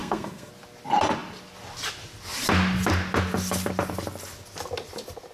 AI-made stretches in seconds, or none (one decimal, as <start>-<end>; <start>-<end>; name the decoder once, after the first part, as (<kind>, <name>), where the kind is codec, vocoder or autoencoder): 0.0-0.5 (codec, SNAC)